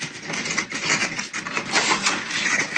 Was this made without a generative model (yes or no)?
yes